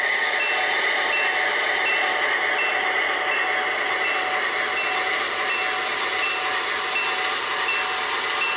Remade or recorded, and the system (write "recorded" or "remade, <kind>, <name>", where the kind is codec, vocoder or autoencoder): recorded